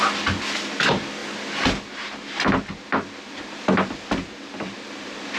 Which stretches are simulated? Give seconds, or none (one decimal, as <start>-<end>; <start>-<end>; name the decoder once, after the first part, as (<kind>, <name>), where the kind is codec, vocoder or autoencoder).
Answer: none